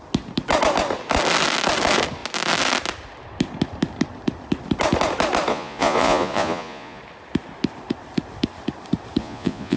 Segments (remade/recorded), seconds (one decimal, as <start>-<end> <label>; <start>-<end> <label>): 0.0-5.5 recorded; 5.5-7.0 remade; 7.0-9.2 recorded; 9.2-9.8 remade